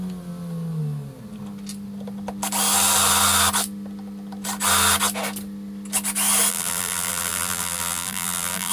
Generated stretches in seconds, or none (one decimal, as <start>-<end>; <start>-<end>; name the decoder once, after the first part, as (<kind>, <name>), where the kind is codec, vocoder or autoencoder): 6.5-8.7 (vocoder, BigVGAN v2)